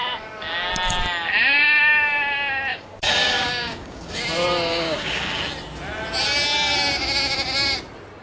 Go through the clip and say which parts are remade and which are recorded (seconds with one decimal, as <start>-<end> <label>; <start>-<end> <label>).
0.0-2.7 recorded; 2.7-4.2 remade; 4.2-4.7 recorded; 4.7-5.4 remade; 5.4-8.2 recorded